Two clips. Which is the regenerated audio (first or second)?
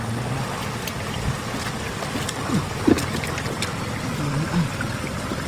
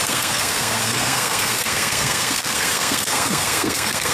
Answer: second